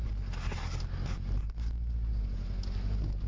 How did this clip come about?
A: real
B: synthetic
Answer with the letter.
A